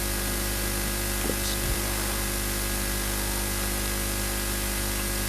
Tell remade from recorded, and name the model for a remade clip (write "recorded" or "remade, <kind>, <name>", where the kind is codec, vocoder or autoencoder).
recorded